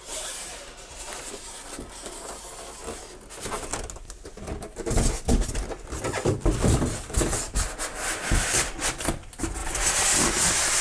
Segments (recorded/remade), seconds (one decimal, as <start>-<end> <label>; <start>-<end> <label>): 0.0-10.8 recorded